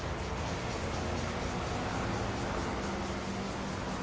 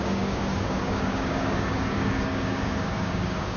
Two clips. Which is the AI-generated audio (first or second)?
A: second